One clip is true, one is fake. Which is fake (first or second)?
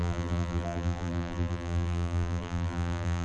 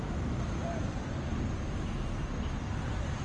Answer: first